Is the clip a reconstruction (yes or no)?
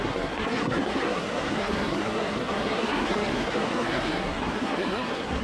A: yes